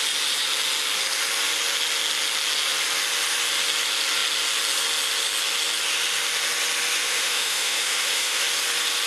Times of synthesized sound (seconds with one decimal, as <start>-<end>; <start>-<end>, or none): 7.0-8.4